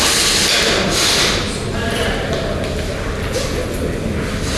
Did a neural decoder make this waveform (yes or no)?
no